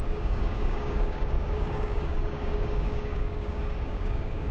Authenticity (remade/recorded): remade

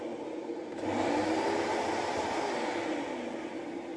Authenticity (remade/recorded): recorded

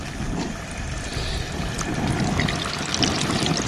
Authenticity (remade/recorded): recorded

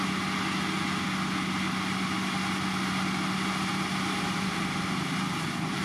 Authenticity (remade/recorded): recorded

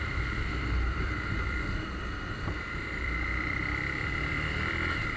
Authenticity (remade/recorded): remade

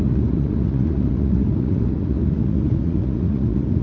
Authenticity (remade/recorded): remade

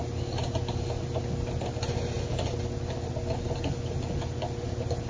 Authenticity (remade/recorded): recorded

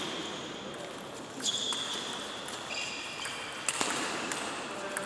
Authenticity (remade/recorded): recorded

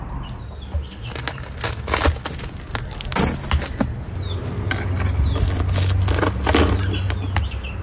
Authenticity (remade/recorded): recorded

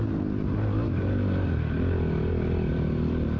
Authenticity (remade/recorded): recorded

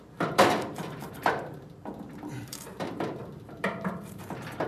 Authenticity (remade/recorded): remade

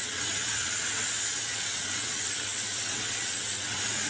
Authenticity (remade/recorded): remade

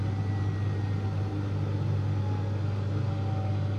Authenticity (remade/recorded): recorded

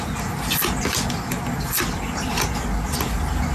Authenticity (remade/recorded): recorded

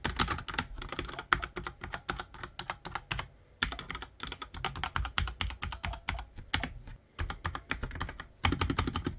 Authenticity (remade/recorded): recorded